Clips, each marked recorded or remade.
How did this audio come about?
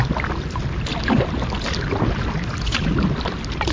recorded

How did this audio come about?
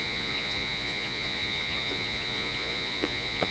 remade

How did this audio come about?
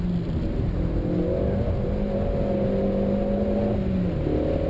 recorded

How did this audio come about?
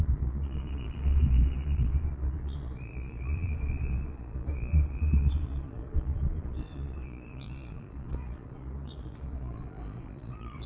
remade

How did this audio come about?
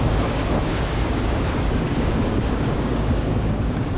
remade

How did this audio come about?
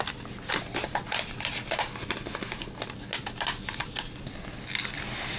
recorded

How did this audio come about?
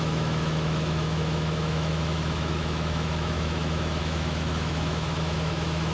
remade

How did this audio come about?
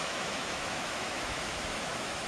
remade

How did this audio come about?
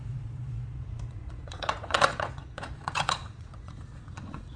remade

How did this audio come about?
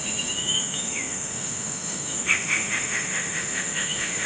remade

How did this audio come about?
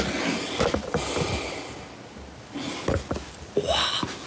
recorded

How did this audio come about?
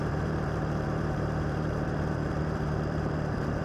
remade